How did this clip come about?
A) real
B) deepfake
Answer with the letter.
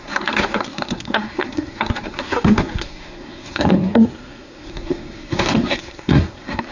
B